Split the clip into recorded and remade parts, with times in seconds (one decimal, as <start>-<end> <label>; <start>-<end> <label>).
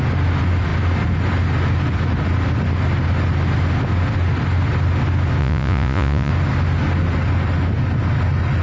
0.0-5.4 recorded; 5.4-6.3 remade; 6.3-8.6 recorded